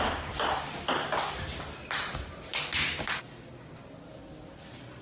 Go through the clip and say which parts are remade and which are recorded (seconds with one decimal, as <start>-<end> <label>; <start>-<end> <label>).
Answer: 0.0-5.0 recorded